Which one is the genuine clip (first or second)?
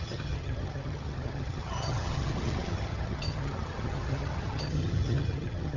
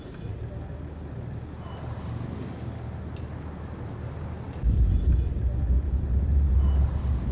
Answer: second